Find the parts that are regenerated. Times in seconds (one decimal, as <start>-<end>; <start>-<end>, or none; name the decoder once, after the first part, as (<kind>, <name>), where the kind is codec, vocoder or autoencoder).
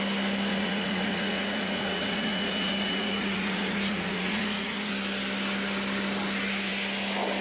0.5-4.9 (vocoder, Vocos)